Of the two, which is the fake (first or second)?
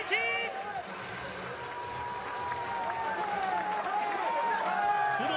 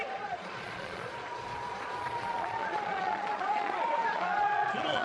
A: second